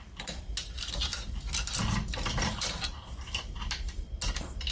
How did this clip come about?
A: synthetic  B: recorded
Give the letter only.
B